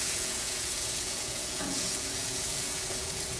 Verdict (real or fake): fake